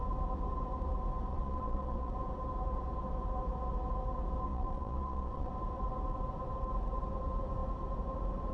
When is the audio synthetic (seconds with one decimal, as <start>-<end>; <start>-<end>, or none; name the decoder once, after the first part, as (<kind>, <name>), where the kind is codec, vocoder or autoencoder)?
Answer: 1.3-2.1 (vocoder, Vocos); 4.5-5.5